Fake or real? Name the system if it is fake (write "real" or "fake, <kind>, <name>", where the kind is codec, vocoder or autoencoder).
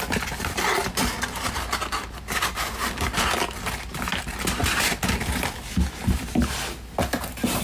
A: real